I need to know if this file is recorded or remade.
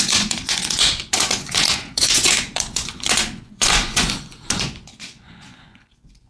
remade